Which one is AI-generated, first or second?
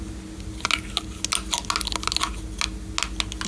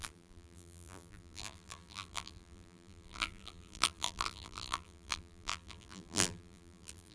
second